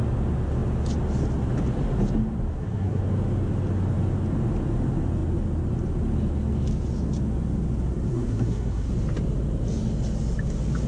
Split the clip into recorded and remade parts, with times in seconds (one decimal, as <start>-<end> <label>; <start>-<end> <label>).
0.0-2.5 recorded; 2.5-3.0 remade; 3.0-8.1 recorded; 8.1-8.9 remade; 8.9-10.9 recorded